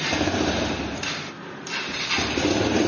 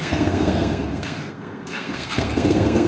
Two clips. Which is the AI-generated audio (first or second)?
second